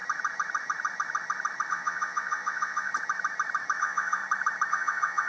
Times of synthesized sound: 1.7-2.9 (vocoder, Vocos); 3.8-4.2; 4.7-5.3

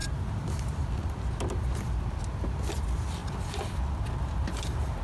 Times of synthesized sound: 0.0-2.0 (vocoder, BigVGAN v2)

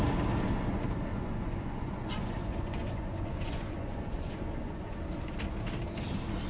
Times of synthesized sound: 1.1-5.0 (vocoder, Vocos)

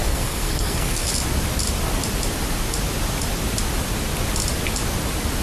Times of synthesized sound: 0.0-1.1 (codec, SNAC)

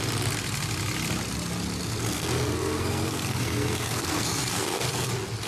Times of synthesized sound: 1.8-5.1 (codec, SNAC)

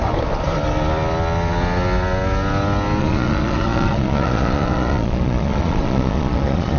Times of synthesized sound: 3.0-6.8 (vocoder, Vocos)

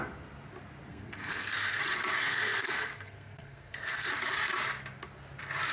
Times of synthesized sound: 0.9-1.8 (codec, SNAC); 2.2-4.1

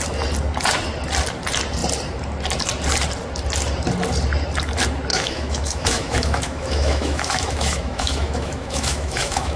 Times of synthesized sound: 5.1-9.6 (autoencoder, DAC-VAE)